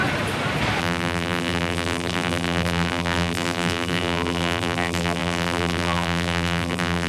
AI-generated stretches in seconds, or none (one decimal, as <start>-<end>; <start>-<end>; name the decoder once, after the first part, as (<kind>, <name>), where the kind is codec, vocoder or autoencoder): 0.8-7.1 (vocoder, BigVGAN v2)